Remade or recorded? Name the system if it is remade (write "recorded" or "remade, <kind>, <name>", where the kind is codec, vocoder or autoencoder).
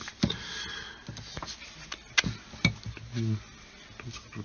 recorded